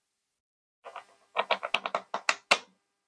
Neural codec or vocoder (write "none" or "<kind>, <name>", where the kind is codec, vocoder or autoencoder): none